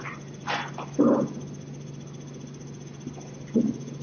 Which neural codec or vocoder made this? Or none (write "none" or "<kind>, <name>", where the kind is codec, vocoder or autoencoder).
none